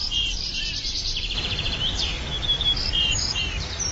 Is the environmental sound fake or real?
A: fake